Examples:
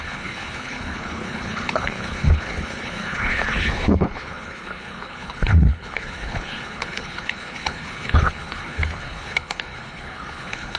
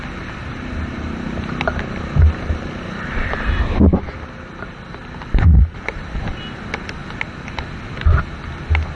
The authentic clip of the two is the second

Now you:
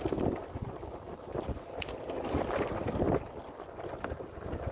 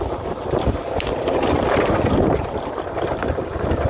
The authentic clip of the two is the first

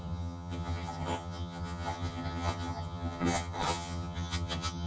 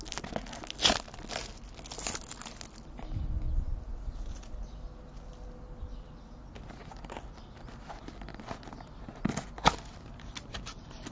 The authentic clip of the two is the second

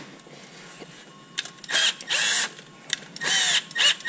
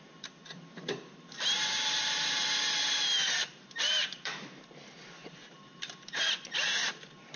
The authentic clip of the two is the first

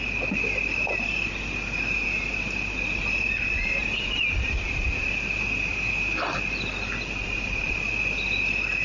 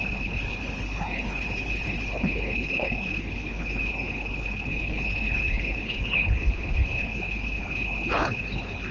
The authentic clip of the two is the first